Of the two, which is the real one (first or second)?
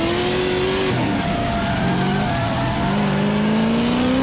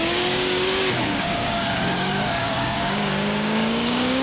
first